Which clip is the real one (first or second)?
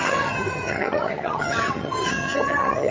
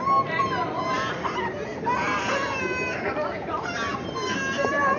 second